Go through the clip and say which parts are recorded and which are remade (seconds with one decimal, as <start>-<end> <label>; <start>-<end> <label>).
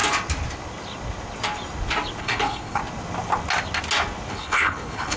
0.0-2.2 recorded; 2.2-2.8 remade; 2.8-4.3 recorded; 4.3-5.2 remade